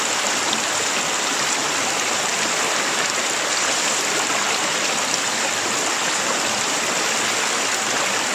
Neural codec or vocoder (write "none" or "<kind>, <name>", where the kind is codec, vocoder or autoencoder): vocoder, BigVGAN v2